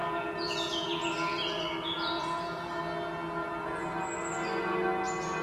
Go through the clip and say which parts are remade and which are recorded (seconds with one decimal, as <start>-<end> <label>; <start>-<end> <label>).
0.0-2.8 remade; 2.8-5.4 recorded